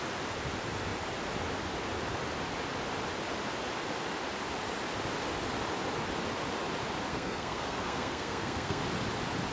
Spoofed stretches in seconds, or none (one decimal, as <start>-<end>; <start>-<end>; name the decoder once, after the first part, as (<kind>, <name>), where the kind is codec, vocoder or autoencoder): 7.1-8.8 (codec, SNAC)